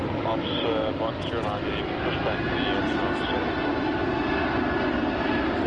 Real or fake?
real